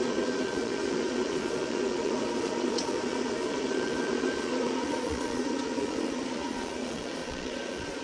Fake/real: fake